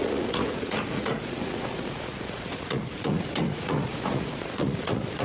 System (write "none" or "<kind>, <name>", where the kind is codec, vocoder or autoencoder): vocoder, Vocos